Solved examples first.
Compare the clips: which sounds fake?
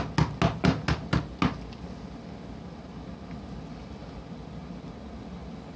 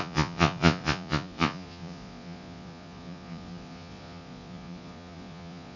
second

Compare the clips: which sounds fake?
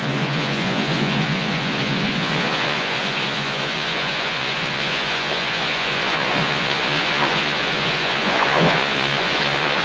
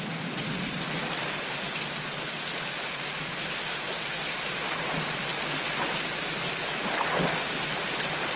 first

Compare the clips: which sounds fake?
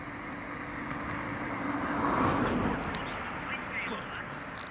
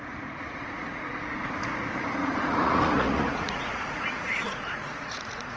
second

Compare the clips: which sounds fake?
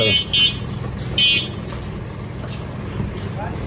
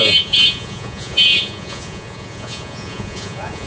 second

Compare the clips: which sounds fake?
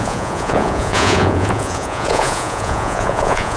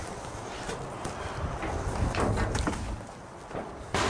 first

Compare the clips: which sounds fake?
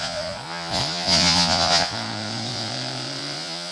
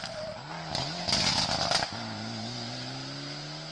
first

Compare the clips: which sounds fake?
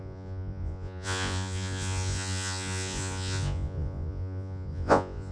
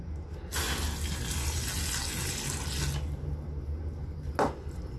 first